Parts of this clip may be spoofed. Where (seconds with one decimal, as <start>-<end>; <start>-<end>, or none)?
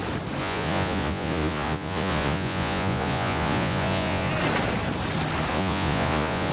0.4-4.3; 5.5-6.5